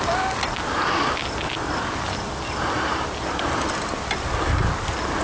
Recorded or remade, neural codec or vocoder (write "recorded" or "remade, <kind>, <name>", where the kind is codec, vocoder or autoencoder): recorded